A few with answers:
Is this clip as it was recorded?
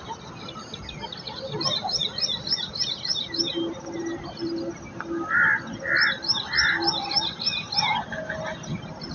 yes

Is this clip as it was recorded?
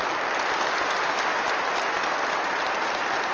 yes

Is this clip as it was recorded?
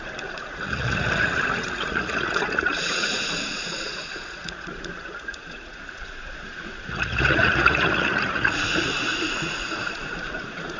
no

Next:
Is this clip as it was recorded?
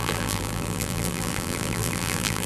no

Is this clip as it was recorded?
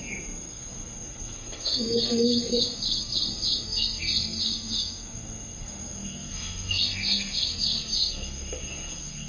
no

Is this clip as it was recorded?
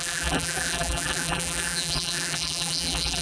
no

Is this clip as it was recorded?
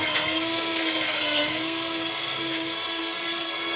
no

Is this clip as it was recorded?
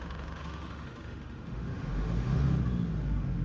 no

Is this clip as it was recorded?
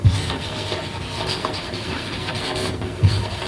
no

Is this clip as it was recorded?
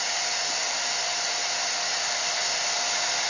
yes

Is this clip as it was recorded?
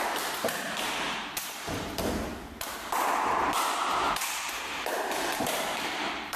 no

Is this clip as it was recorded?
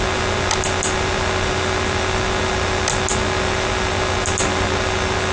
yes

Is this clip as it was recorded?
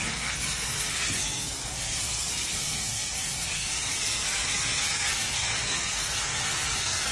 no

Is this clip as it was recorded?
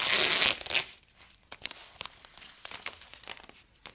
yes